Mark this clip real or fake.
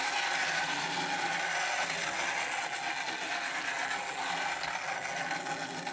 real